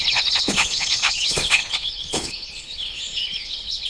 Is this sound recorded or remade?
remade